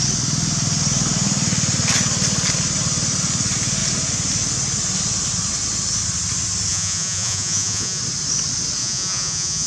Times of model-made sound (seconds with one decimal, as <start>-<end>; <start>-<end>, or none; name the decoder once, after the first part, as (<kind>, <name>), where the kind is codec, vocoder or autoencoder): 6.7-8.0 (vocoder, Vocos); 8.8-9.7